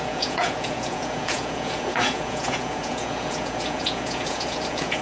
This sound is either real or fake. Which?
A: fake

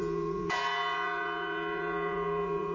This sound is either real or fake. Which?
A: fake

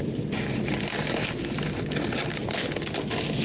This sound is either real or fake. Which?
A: real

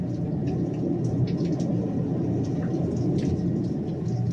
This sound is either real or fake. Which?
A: real